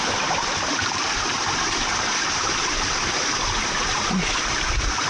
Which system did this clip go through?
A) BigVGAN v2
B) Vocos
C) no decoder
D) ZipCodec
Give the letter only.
A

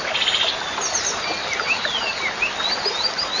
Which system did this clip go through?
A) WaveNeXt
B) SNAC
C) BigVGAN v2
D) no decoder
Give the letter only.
D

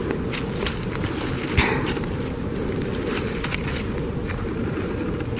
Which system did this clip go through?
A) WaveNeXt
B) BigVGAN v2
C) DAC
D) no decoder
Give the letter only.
D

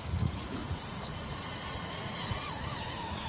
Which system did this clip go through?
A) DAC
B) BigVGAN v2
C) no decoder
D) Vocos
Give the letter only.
D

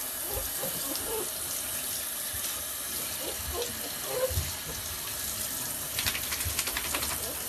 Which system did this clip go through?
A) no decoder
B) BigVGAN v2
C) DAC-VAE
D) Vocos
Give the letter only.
A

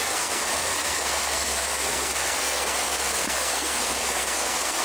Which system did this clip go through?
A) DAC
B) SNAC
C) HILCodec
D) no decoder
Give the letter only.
B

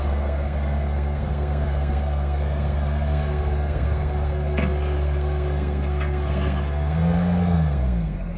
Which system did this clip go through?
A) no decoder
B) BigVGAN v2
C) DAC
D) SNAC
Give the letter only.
D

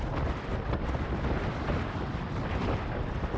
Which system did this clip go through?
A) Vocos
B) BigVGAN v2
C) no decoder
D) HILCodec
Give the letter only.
C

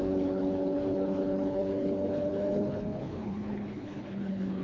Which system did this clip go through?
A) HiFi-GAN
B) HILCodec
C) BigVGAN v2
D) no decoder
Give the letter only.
B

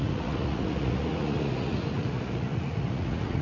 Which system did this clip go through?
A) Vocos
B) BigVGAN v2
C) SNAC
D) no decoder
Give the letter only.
A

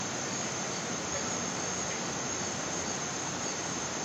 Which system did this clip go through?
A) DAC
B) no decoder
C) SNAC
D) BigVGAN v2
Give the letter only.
D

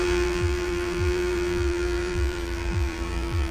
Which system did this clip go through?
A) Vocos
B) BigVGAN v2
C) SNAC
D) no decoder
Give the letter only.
B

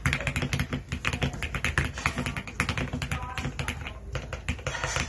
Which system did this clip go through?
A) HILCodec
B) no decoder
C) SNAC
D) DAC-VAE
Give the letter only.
B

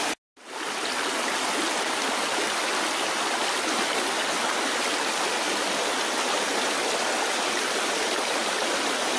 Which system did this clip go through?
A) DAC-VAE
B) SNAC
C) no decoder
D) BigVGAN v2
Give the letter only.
C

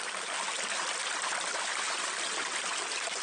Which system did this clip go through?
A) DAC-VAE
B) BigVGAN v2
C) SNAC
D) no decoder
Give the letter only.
D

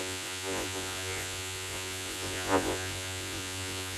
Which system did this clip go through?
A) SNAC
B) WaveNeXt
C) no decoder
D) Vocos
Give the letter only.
D